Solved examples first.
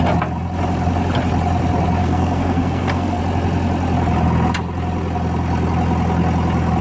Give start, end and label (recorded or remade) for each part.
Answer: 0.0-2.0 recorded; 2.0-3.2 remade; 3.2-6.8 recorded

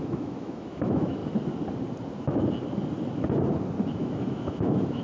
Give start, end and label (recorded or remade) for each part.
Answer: 0.0-1.2 remade; 1.2-3.9 recorded; 3.9-5.0 remade

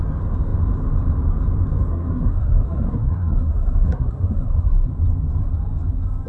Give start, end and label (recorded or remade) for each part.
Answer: 0.0-1.9 recorded; 1.9-4.9 remade; 4.9-6.3 recorded